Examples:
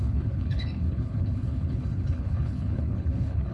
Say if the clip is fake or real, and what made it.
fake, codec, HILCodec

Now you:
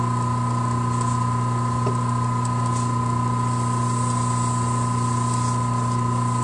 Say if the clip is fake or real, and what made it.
real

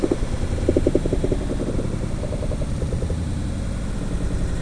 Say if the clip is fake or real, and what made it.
real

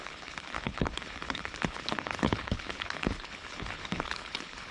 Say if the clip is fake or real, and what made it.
fake, codec, HILCodec